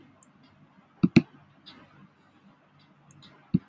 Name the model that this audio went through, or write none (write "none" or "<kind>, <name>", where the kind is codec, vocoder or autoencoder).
none